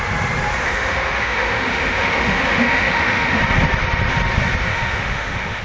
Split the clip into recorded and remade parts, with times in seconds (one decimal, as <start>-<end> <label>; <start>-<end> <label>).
0.0-0.6 recorded; 0.6-3.4 remade; 3.4-4.7 recorded; 4.7-5.6 remade